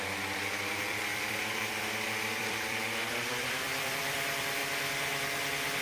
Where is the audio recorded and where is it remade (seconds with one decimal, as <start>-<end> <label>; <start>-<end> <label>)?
0.0-4.6 remade; 4.6-5.8 recorded